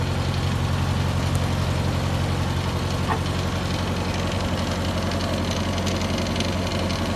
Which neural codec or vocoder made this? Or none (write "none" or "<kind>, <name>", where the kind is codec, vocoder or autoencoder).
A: none